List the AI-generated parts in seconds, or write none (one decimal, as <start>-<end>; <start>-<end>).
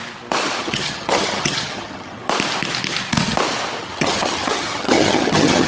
0.6-2.2; 3.8-5.7